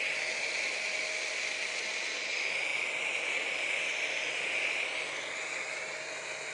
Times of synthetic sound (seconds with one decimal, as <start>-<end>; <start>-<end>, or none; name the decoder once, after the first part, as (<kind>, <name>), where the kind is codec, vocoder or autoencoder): none